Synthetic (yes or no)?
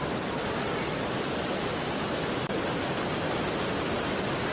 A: no